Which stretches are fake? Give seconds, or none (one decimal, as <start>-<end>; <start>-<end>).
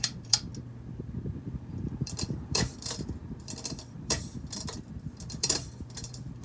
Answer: 0.0-0.5; 1.4-6.4